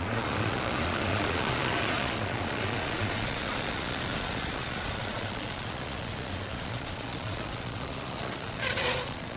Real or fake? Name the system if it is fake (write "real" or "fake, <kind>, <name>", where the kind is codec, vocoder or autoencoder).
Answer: fake, vocoder, Vocos